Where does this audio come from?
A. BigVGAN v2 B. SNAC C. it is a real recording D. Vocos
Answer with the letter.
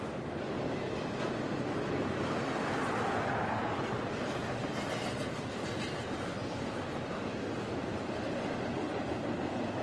A